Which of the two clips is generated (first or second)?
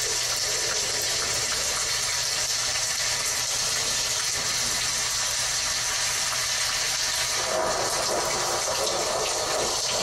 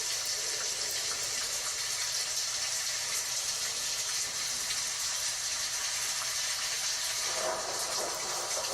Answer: second